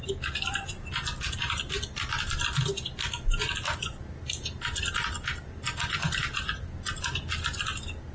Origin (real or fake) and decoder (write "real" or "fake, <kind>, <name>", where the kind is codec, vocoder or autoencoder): real